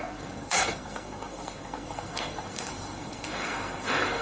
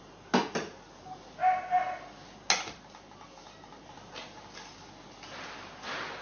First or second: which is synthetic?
first